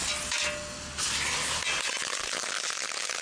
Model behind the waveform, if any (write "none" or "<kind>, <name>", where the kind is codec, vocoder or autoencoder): none